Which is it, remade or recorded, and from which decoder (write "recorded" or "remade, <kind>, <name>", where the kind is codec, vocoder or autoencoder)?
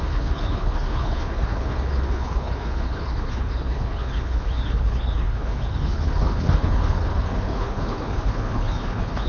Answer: remade, codec, HILCodec